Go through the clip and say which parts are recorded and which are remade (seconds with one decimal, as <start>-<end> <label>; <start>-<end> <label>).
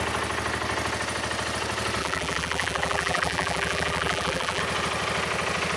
0.0-2.0 recorded; 2.0-4.6 remade; 4.6-5.8 recorded